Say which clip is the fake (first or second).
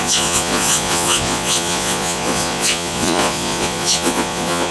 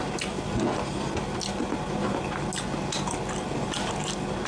first